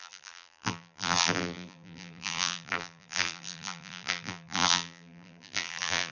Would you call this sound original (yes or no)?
no